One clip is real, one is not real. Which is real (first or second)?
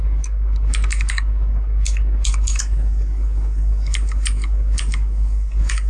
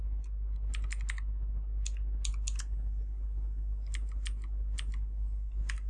second